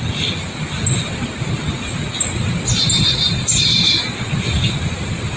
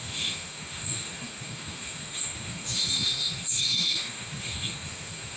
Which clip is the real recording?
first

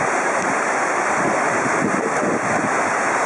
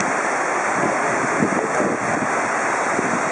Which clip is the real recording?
second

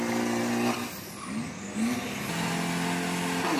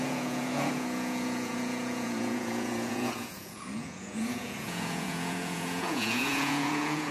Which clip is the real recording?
first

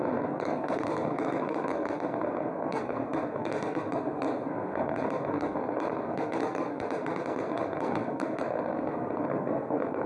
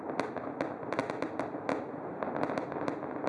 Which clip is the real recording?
second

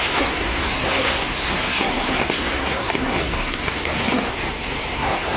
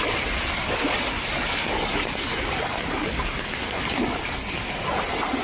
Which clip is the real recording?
second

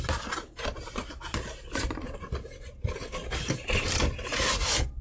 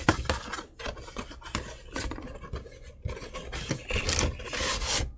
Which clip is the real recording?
second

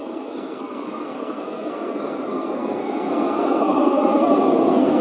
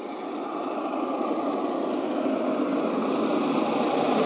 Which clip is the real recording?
second